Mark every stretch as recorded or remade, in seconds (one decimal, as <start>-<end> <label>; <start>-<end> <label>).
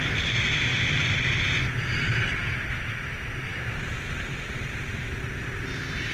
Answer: 0.0-6.1 recorded